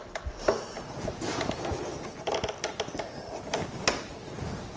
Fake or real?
real